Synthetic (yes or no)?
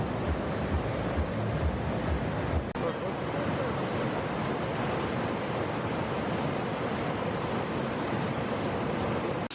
no